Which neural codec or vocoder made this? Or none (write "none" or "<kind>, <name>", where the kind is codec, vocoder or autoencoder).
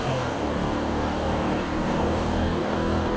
codec, DAC